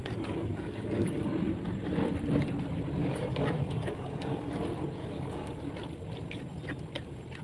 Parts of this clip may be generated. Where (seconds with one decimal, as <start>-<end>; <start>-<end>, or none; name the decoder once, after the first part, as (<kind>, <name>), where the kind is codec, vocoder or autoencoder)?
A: 0.0-1.2 (codec, DAC); 3.0-4.5; 5.0-5.7